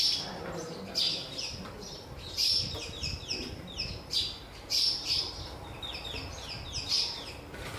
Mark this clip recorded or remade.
remade